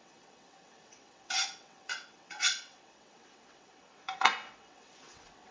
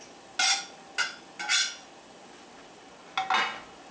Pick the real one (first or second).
second